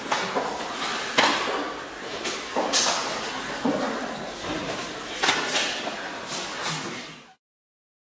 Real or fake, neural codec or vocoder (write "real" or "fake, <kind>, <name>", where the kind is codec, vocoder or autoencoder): real